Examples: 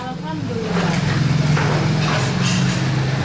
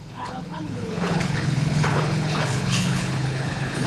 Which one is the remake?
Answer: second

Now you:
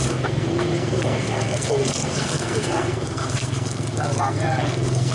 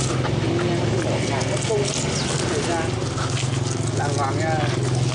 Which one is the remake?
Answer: first